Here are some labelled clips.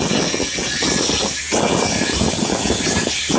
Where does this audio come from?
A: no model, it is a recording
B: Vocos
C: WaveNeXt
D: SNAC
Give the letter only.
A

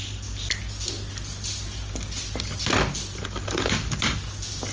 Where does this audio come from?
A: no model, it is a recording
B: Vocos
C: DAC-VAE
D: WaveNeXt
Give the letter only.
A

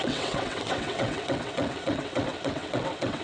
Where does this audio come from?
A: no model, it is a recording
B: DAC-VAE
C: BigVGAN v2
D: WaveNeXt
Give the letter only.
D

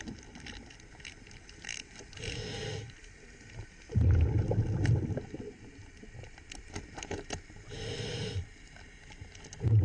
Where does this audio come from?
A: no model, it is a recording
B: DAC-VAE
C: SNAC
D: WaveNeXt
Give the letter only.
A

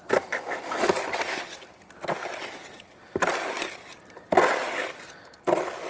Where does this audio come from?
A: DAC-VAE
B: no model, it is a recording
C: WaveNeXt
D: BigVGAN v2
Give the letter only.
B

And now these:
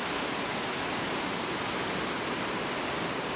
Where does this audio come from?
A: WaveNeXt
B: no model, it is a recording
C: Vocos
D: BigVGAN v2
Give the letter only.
B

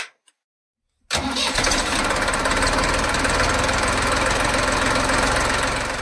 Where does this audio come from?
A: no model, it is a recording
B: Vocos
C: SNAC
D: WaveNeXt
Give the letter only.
A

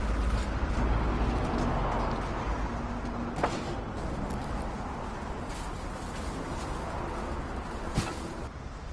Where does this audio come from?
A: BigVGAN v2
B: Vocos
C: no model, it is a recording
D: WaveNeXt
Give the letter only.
C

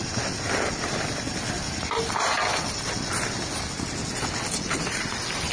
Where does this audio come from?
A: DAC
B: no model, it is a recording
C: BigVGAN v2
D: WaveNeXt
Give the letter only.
B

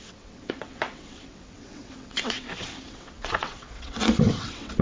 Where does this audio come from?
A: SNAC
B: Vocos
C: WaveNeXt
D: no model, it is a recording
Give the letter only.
C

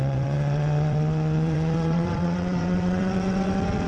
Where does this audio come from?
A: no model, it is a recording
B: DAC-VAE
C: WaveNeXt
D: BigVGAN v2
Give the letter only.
C